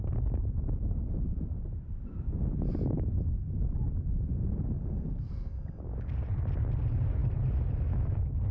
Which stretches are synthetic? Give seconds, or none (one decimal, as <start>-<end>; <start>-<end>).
none